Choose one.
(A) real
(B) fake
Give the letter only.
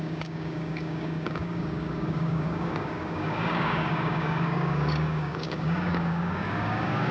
B